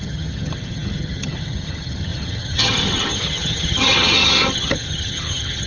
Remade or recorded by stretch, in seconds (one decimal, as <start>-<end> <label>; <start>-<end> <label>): 0.0-5.7 remade